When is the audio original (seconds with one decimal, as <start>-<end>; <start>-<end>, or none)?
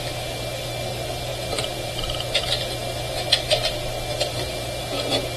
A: 0.0-5.4